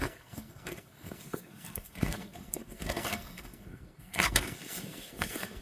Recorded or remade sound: remade